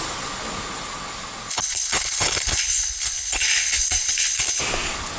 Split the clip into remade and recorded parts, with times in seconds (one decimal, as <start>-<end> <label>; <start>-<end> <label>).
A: 0.0-1.5 recorded; 1.5-4.6 remade; 4.6-5.2 recorded